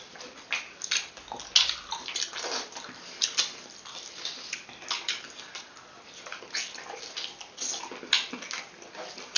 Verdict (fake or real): real